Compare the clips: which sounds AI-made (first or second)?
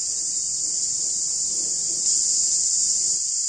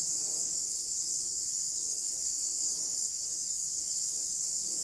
second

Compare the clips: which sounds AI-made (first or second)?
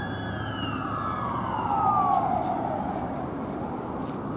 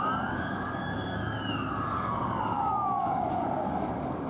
second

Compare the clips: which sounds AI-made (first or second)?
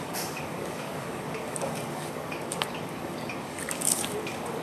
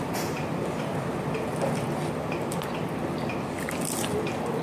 first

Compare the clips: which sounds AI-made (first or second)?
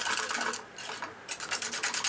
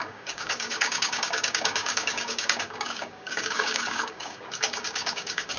second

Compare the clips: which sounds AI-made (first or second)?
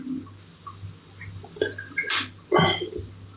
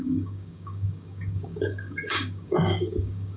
second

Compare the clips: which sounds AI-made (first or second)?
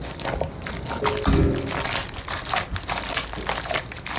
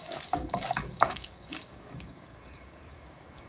second